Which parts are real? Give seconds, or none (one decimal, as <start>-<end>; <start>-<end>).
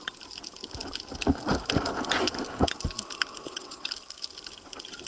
0.0-3.4; 3.9-5.1